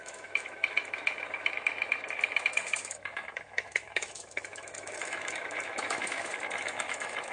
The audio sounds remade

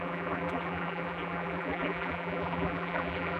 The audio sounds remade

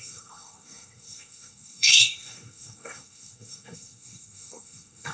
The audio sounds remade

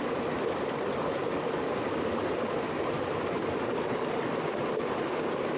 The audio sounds recorded